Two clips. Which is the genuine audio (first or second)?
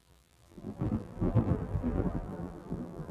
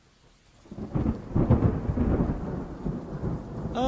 second